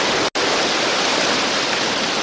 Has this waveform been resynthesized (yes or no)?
no